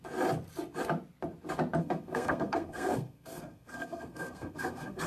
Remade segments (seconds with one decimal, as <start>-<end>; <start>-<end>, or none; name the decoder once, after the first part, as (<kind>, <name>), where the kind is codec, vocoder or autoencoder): 1.8-5.1 (codec, SNAC)